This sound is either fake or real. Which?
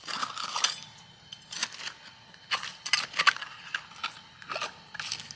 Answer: real